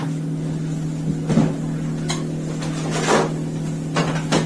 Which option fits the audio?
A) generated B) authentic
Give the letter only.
B